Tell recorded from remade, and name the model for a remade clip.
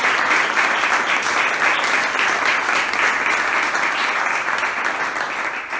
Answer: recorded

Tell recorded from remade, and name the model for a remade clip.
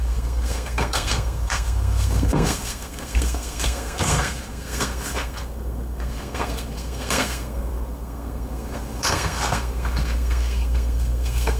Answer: remade, codec, SNAC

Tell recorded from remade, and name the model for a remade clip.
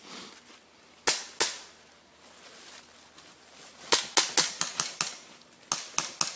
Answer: recorded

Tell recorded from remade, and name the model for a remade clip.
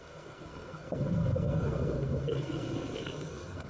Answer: remade, codec, SNAC